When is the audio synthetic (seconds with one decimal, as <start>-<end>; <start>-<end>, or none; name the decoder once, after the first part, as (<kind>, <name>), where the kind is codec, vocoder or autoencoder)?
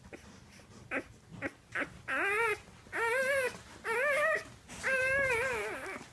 none